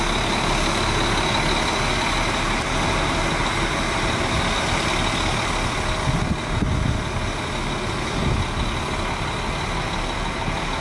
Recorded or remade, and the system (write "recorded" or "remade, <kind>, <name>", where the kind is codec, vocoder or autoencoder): recorded